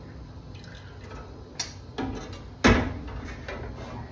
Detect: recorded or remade recorded